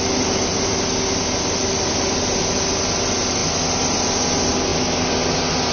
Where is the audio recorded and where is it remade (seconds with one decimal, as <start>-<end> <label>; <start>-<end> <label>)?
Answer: 0.0-5.7 recorded